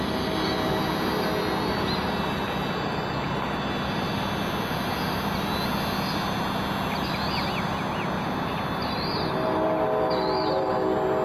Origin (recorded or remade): recorded